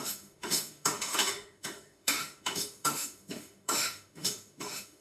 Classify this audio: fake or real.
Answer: fake